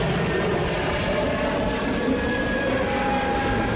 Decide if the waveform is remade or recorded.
recorded